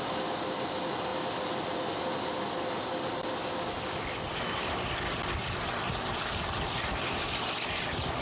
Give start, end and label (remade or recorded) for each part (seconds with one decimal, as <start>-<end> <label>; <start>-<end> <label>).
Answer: 0.0-8.2 recorded